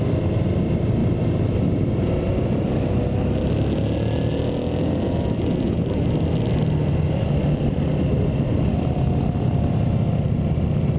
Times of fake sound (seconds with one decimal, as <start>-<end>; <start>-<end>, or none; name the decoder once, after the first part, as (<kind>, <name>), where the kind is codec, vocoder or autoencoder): 7.4-8.7 (vocoder, BigVGAN v2)